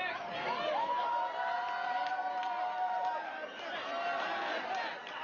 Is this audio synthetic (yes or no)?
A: yes